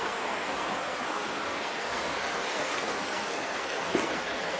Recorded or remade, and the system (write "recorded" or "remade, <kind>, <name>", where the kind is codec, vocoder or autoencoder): remade, codec, SNAC